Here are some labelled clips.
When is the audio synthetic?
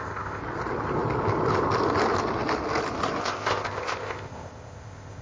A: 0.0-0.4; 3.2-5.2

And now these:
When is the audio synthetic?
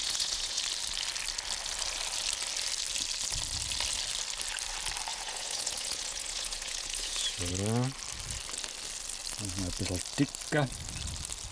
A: 0.0-0.6; 5.1-7.5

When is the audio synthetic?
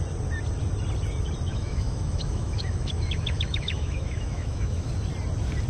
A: 1.5-4.9